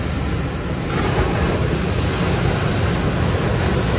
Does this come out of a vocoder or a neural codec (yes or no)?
no